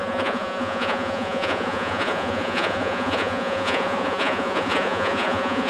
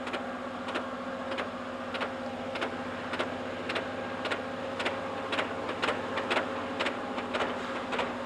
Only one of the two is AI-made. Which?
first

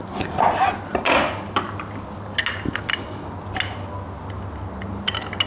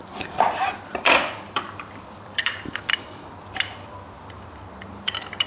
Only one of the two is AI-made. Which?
second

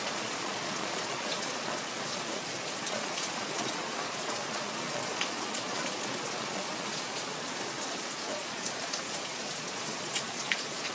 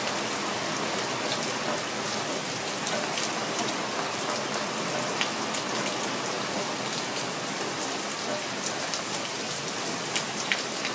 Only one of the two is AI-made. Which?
first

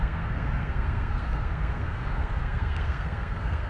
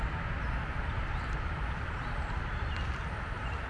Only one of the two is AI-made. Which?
first